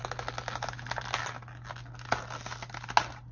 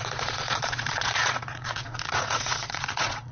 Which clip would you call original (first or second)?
first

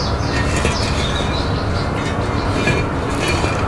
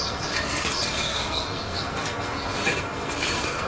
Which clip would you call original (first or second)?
first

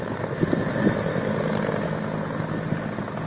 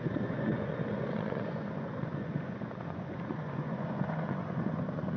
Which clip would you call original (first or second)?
first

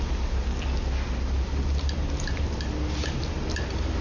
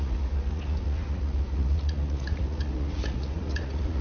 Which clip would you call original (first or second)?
first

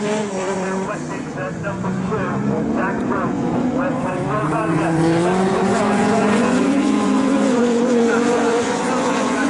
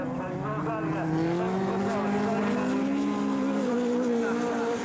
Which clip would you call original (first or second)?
second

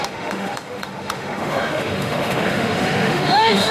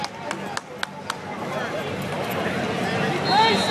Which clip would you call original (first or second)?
second